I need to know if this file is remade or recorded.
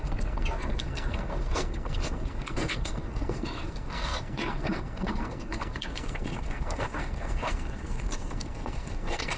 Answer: remade